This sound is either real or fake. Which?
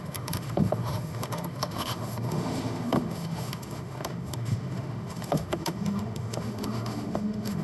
fake